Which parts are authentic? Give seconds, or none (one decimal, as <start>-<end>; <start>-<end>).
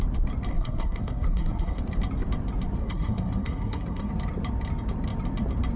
0.0-0.5; 1.8-2.8; 4.1-5.8